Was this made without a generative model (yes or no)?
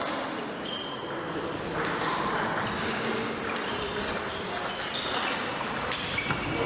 yes